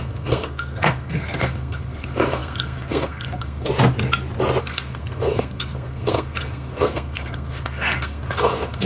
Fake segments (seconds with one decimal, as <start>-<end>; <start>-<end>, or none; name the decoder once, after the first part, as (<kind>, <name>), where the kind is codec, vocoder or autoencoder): 0.0-3.7 (codec, SNAC); 4.6-8.9